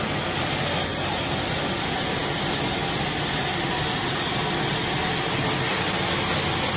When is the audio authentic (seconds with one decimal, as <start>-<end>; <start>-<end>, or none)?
0.0-6.8